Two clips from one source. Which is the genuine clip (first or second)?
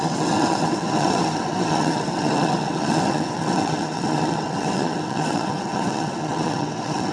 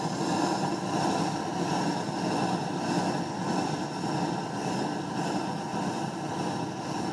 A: second